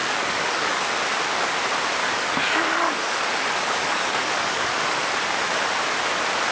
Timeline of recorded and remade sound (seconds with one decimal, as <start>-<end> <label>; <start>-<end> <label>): 0.0-0.8 remade; 0.8-2.0 recorded; 2.0-5.0 remade; 5.0-6.5 recorded